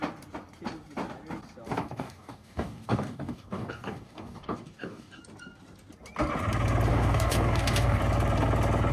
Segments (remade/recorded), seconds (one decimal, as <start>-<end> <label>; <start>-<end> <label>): 0.0-1.8 recorded; 1.8-5.2 remade; 5.2-6.9 recorded; 6.9-8.0 remade; 8.0-8.9 recorded